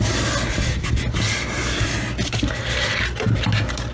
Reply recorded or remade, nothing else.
recorded